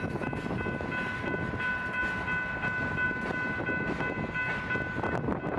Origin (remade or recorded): recorded